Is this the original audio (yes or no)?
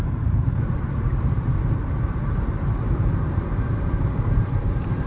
no